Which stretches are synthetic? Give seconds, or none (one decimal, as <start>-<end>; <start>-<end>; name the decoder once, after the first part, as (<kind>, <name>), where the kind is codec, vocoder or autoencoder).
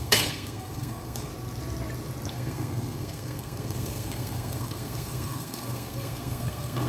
0.0-1.3 (codec, SNAC); 2.3-6.9